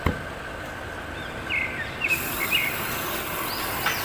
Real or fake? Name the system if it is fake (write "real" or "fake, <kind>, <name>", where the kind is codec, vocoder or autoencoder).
real